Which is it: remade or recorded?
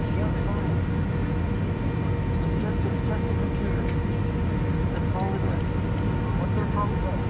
recorded